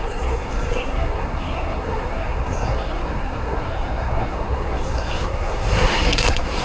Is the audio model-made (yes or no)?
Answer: yes